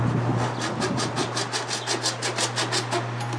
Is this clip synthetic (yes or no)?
no